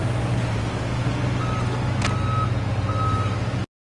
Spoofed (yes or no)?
no